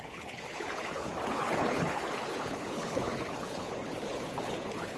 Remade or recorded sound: remade